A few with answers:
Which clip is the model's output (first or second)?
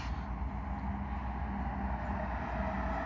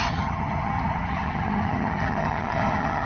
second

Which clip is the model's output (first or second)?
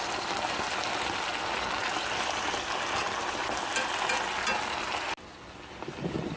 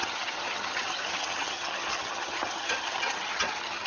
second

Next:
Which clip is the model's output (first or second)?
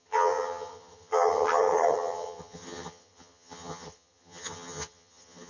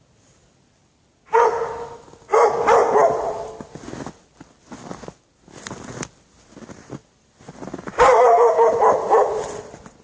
first